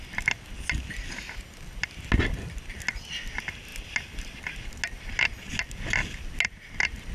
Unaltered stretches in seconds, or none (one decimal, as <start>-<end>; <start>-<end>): 0.0-7.1